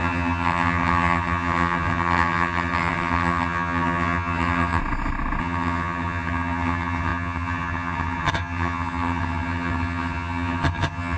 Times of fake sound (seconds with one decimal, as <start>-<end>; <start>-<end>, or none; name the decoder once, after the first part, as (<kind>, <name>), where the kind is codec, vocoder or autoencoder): 0.0-4.8 (vocoder, HiFi-GAN); 5.4-11.2